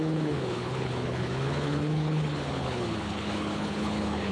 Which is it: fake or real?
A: fake